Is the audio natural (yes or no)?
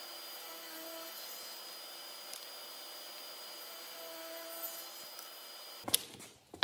yes